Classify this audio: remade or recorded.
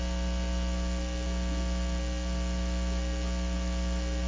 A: recorded